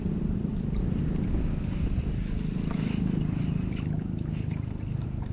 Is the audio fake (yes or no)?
no